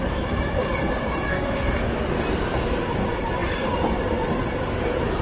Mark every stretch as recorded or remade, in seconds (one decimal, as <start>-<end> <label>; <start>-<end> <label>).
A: 0.0-1.3 recorded; 1.3-1.9 remade; 1.9-5.2 recorded